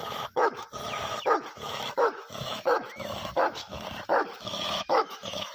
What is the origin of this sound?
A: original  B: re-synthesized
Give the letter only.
B